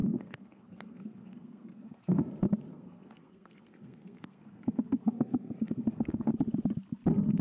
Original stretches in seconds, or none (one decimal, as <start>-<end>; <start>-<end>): 2.2-2.7; 6.3-7.4